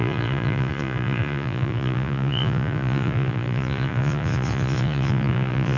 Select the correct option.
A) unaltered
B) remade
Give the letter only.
B